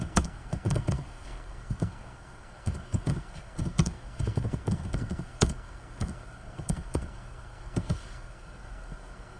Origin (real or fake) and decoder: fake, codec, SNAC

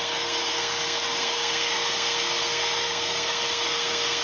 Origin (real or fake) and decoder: fake, codec, SNAC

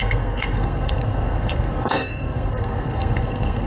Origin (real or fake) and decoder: fake, codec, SNAC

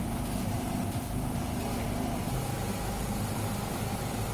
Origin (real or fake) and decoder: real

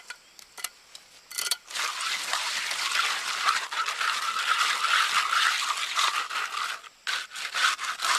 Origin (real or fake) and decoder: real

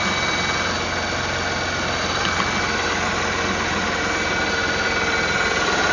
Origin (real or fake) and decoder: real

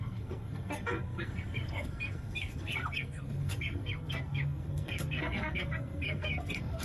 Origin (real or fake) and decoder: fake, codec, SNAC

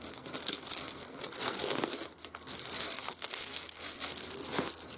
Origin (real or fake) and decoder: fake, codec, SNAC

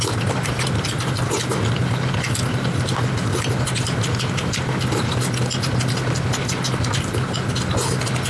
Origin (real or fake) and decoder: real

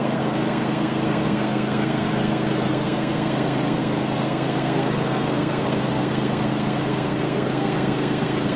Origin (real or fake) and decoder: fake, codec, SNAC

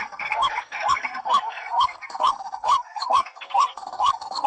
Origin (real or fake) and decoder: fake, codec, SNAC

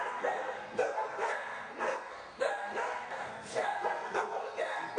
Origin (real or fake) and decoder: fake, codec, SNAC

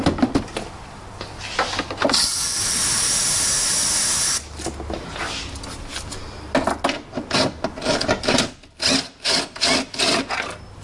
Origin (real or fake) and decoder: real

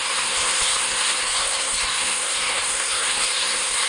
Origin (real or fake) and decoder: fake, codec, SNAC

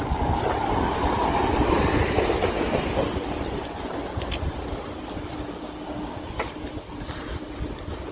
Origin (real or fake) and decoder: real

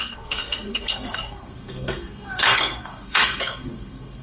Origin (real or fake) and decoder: fake, codec, SNAC